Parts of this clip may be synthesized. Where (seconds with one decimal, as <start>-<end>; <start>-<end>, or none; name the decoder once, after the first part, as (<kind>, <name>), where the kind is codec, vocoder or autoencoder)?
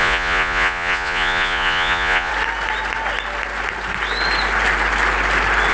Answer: 0.0-2.3 (vocoder, Vocos)